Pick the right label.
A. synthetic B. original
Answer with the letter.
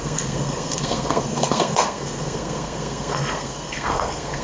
A